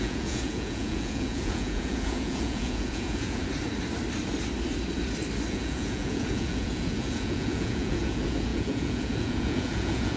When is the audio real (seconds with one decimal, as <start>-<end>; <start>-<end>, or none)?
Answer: 3.4-5.5